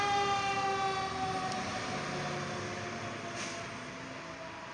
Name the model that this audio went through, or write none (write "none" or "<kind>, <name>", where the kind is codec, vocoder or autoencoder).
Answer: none